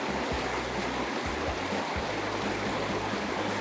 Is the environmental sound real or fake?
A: real